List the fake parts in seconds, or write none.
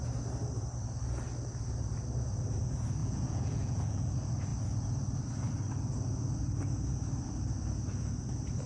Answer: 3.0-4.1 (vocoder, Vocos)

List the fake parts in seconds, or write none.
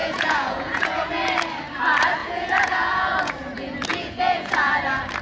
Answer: 0.0-1.1 (vocoder, Vocos); 2.2-3.3; 3.9-4.7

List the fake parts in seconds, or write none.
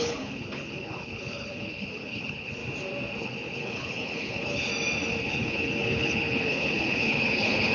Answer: 0.0-2.6 (codec, HILCodec); 3.2-4.7; 5.2-7.7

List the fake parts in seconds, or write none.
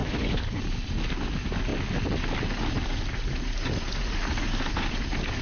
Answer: 0.0-0.6 (codec, HILCodec)